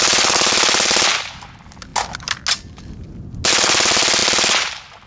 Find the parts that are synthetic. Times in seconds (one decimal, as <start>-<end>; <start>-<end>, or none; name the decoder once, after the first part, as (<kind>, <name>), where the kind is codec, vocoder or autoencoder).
none